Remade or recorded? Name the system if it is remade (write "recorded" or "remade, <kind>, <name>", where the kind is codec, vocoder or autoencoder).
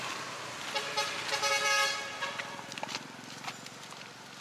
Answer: recorded